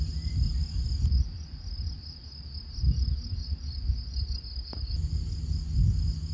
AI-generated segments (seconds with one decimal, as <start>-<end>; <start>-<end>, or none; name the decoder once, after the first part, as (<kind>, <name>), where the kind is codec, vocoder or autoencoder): none